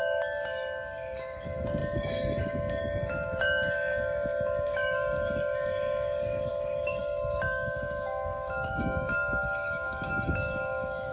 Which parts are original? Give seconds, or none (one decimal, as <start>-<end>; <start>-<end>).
none